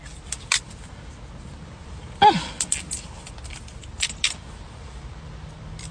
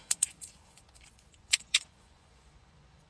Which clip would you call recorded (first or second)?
first